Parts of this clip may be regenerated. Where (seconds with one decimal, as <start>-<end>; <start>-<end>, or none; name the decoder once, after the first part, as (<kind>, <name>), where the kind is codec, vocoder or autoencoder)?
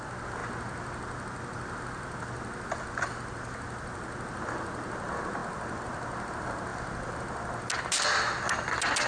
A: none